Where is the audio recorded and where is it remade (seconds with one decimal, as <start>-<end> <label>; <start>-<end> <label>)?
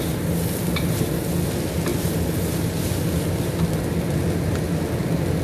0.0-5.4 recorded